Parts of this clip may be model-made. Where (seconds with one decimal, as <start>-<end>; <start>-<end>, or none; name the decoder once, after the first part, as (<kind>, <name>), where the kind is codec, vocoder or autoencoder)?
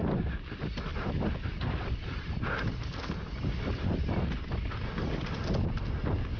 none